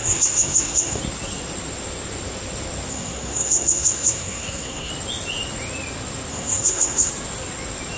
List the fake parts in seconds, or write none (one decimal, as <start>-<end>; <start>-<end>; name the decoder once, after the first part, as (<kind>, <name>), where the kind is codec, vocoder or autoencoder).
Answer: 0.0-1.0 (codec, SNAC); 2.9-4.9; 6.3-7.1